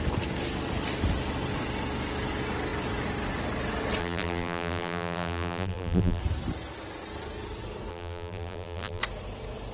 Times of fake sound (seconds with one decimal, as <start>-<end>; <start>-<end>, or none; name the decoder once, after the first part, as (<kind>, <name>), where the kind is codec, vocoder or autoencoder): 4.0-6.2 (vocoder, BigVGAN v2); 7.9-9.0